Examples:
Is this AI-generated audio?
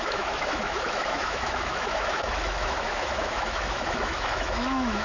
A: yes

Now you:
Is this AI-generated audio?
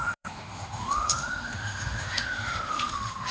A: yes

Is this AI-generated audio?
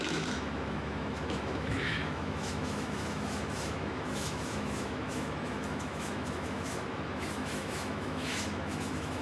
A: yes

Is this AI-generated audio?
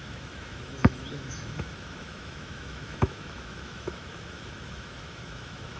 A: yes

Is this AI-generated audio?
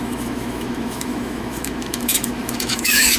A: yes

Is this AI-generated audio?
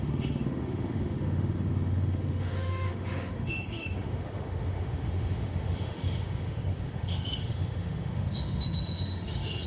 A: yes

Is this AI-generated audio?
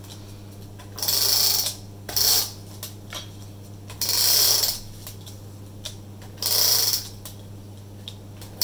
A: no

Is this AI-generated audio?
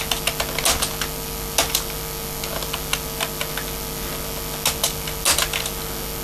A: no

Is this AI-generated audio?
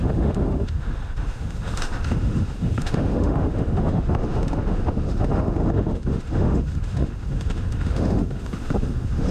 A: yes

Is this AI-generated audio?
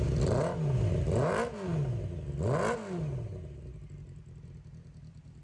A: no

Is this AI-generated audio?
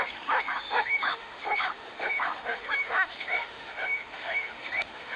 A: yes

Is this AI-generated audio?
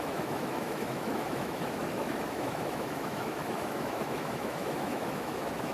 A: yes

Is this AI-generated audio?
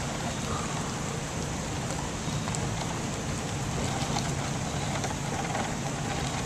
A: no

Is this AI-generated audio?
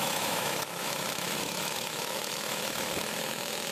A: yes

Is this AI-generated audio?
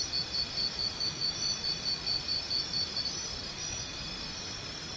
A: no